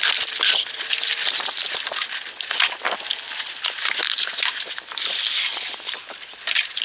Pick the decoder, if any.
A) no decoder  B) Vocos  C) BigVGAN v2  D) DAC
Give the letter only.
A